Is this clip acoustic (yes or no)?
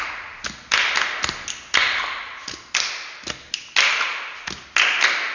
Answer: yes